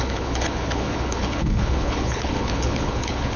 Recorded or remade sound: remade